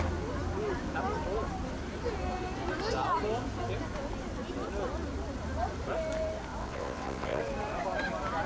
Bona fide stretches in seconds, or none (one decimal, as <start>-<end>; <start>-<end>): 0.0-6.6; 7.4-8.5